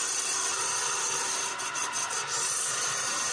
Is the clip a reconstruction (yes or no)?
no